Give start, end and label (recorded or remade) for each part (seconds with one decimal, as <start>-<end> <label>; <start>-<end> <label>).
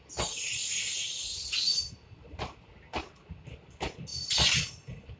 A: 0.0-5.2 recorded